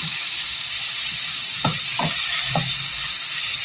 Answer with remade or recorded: remade